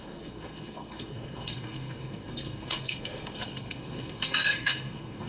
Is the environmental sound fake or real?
fake